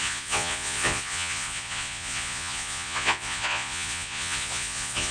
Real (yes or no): no